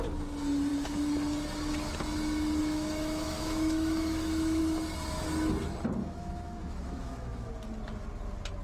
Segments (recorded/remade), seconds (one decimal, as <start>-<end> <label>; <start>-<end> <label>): 0.0-2.6 recorded; 2.6-4.6 remade; 4.6-6.0 recorded; 6.0-7.5 remade; 7.5-8.6 recorded